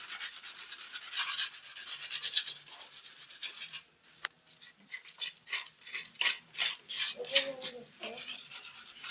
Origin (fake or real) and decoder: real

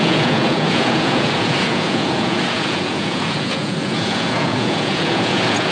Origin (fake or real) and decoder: fake, vocoder, Vocos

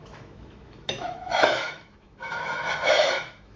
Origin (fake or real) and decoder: fake, autoencoder, DAC-VAE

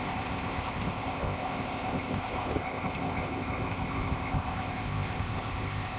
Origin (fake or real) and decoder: fake, codec, ZipCodec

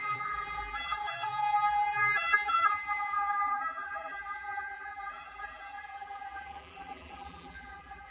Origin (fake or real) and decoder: fake, vocoder, BigVGAN v2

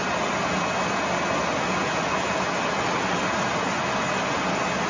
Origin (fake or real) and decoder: real